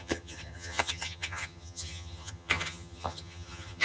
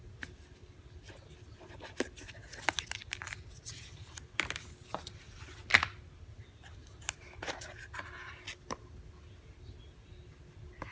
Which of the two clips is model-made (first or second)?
first